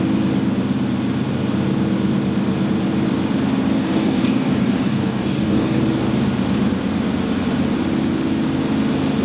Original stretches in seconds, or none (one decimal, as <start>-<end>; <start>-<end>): 0.0-3.8; 5.8-9.2